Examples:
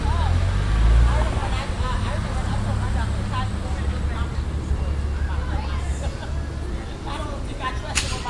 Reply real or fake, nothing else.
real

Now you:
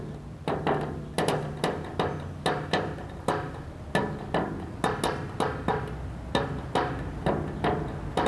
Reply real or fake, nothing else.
real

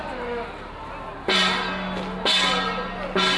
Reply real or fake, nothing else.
real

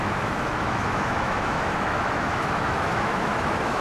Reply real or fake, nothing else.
fake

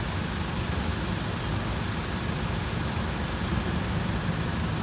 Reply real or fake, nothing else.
real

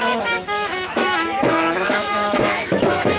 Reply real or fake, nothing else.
fake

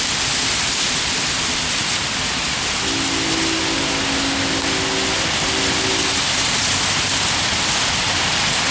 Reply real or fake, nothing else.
real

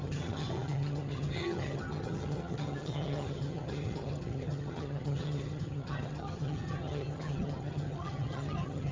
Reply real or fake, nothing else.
fake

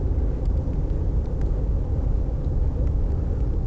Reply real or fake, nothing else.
real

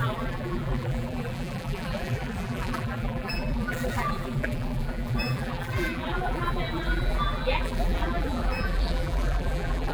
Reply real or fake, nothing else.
fake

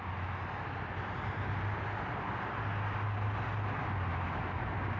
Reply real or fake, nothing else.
real